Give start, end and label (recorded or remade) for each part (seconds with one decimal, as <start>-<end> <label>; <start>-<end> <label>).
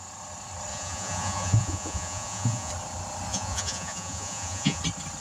0.0-0.7 recorded; 0.7-2.7 remade; 2.7-3.3 recorded; 3.3-4.8 remade; 4.8-5.2 recorded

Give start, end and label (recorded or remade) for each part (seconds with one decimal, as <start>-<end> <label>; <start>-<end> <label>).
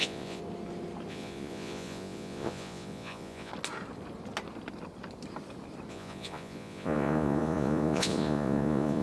0.0-0.4 remade; 0.4-1.1 recorded; 1.1-3.5 remade; 3.5-5.9 recorded; 5.9-9.0 remade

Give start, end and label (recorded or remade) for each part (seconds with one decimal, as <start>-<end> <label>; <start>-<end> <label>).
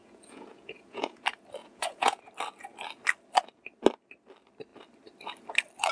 0.0-1.2 remade; 1.2-1.6 recorded; 1.6-2.2 remade; 2.2-5.9 recorded